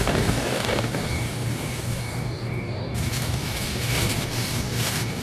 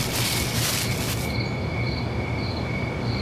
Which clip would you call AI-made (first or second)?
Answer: first